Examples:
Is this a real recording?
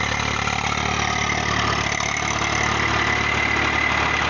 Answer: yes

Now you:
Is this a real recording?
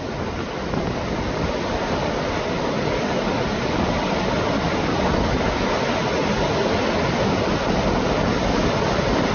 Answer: yes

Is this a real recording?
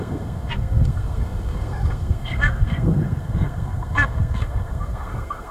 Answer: no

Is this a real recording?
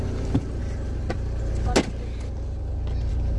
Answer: yes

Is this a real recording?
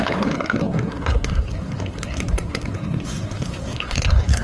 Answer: no